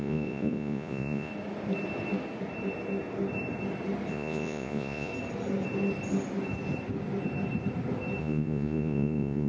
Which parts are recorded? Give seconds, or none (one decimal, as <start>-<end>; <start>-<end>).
1.3-4.1; 5.1-8.2